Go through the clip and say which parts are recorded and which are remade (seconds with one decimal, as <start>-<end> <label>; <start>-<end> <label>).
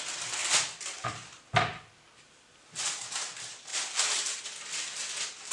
0.0-3.7 recorded; 3.7-4.4 remade; 4.4-5.5 recorded